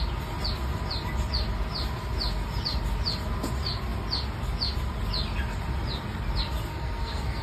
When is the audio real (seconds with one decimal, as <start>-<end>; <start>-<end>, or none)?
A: 0.0-6.7